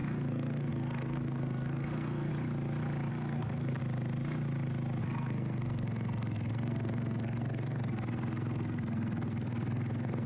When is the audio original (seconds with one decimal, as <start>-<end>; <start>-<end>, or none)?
2.3-3.1; 3.8-5.0